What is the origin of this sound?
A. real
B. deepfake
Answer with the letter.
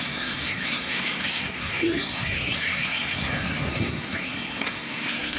B